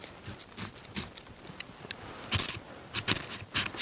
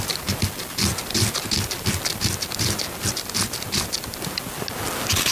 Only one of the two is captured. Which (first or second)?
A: second